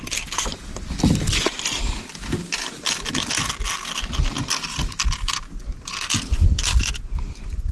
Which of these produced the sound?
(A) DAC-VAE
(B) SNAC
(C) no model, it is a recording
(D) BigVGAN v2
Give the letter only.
C